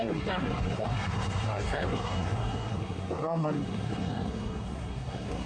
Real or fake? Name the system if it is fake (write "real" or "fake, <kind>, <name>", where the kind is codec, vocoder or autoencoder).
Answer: fake, codec, SNAC